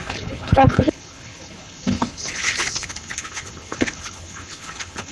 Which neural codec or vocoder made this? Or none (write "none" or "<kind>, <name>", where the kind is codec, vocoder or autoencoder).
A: codec, HILCodec